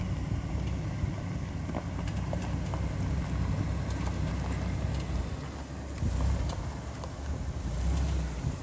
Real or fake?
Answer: real